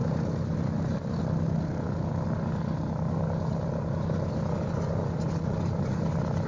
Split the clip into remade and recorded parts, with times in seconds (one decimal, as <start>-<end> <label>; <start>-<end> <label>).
0.0-6.5 recorded

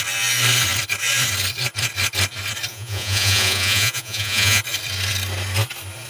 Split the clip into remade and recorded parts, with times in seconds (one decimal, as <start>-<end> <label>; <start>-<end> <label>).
0.0-2.7 recorded; 2.7-4.6 remade; 4.6-6.1 recorded

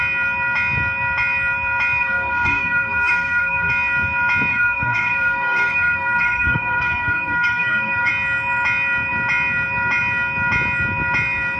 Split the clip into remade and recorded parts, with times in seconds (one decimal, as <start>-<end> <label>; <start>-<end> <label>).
0.0-2.0 recorded; 2.0-3.7 remade; 3.7-4.5 recorded; 4.5-8.1 remade; 8.1-11.6 recorded

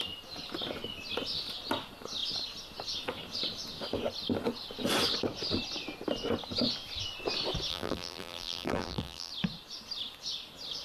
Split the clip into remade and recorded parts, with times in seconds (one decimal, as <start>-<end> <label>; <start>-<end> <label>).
0.0-7.7 recorded; 7.7-9.3 remade; 9.3-10.8 recorded